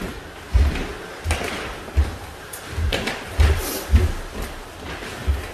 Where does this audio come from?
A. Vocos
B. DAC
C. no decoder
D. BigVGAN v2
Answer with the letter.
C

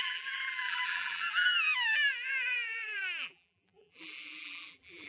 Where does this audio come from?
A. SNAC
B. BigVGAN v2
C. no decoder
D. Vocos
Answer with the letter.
B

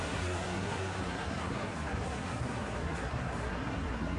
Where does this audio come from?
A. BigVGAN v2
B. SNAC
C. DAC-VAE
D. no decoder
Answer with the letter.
B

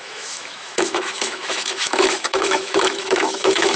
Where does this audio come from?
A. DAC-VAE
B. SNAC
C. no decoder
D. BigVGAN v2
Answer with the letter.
A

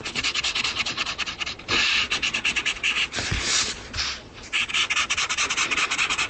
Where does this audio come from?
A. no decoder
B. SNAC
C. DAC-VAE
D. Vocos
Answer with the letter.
D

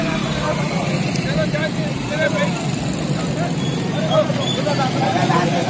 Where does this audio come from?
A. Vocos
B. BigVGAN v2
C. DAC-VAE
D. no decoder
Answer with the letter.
D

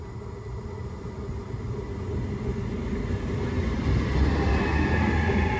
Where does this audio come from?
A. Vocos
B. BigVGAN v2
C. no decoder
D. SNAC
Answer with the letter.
C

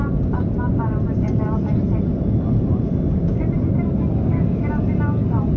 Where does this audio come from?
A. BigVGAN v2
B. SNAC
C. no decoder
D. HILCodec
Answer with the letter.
C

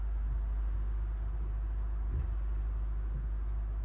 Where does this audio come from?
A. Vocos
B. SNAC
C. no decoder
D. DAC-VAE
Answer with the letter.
C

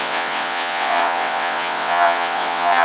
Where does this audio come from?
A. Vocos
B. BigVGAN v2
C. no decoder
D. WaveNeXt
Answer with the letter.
D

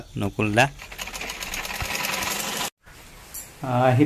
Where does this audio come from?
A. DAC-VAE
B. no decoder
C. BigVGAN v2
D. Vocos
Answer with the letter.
B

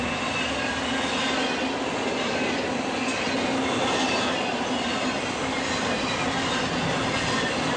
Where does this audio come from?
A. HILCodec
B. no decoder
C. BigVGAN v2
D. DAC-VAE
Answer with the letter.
B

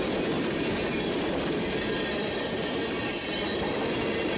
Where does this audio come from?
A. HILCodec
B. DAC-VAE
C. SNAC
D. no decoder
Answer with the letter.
D